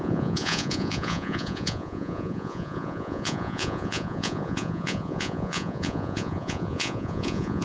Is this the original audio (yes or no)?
no